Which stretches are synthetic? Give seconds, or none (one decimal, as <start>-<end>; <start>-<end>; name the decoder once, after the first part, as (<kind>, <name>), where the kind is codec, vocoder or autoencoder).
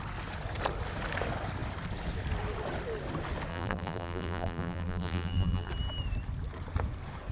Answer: 3.5-5.7 (vocoder, BigVGAN v2)